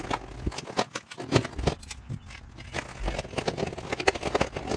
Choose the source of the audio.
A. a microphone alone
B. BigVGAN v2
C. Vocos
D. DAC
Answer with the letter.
A